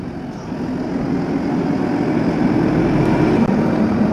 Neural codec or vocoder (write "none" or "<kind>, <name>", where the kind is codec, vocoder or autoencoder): none